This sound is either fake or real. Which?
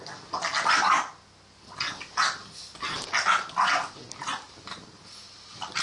real